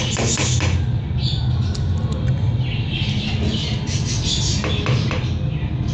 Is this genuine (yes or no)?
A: yes